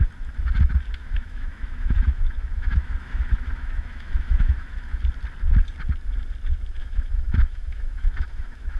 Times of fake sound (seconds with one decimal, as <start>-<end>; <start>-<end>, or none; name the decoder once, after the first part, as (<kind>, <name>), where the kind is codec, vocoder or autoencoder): 0.9-5.0 (autoencoder, DAC-VAE); 6.8-8.8